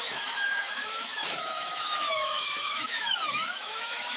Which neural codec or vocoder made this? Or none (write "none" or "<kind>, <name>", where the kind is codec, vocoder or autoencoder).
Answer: autoencoder, DAC-VAE